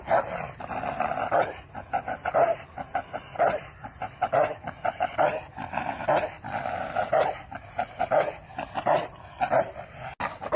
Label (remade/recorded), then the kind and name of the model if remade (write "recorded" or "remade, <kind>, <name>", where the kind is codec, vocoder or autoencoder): recorded